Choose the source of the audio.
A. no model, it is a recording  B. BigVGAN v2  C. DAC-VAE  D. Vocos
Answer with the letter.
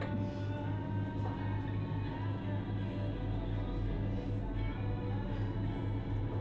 A